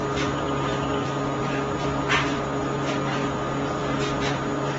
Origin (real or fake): real